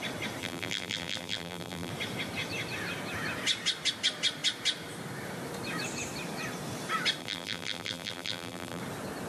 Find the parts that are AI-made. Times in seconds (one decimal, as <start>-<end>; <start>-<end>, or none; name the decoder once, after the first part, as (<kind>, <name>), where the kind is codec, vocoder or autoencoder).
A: 0.4-1.9 (vocoder, BigVGAN v2); 7.2-8.8